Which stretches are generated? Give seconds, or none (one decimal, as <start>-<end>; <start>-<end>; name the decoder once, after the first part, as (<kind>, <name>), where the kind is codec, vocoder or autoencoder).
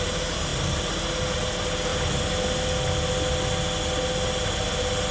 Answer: none